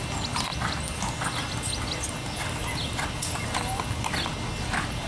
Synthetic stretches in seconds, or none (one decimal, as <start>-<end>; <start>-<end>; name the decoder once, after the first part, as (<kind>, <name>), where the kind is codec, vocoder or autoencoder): none